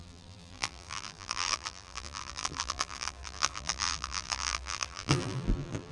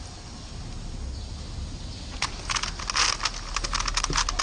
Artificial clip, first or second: first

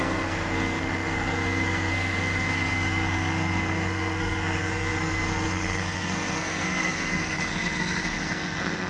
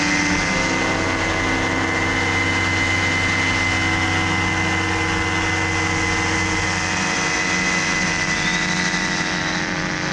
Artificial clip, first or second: first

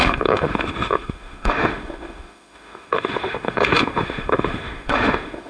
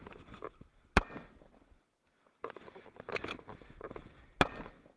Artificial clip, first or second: first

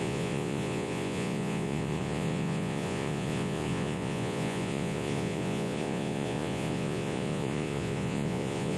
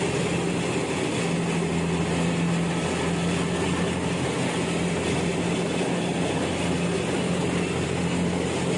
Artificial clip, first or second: first